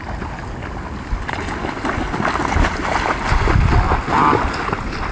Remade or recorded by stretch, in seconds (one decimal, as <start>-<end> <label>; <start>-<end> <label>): 0.0-5.1 recorded